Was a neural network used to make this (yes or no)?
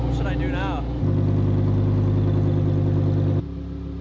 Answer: no